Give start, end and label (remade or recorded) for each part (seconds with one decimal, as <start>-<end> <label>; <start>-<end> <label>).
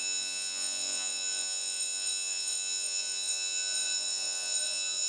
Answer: 0.0-5.1 remade